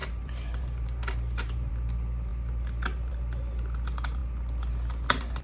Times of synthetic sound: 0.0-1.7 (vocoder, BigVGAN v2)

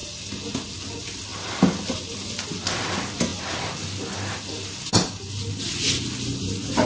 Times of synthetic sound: none

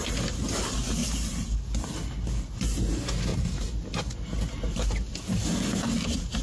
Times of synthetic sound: 3.3-4.0 (vocoder, BigVGAN v2)

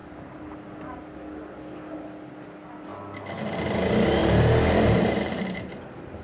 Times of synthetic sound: 4.2-6.2 (vocoder, BigVGAN v2)

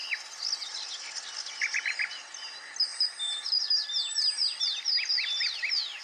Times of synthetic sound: 2.9-5.1 (vocoder, BigVGAN v2)

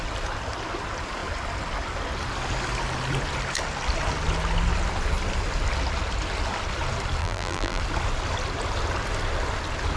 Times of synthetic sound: 7.2-7.8 (vocoder, BigVGAN v2)

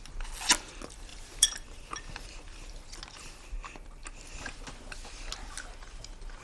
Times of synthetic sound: 1.1-2.9 (vocoder, BigVGAN v2)

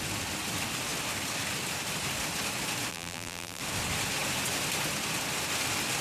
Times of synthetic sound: 2.9-3.6 (vocoder, BigVGAN v2)